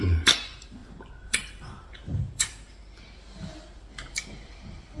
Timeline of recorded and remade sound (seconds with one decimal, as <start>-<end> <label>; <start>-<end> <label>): 0.0-5.0 remade